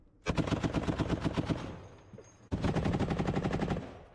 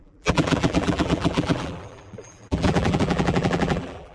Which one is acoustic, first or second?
first